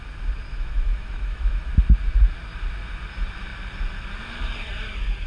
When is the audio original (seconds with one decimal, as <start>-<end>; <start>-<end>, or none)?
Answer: 0.0-0.5; 1.7-5.3